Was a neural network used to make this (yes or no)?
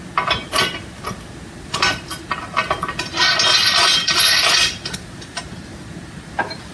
no